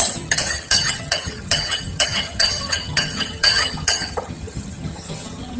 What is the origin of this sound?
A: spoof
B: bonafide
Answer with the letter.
A